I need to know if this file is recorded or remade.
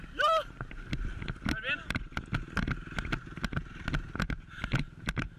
recorded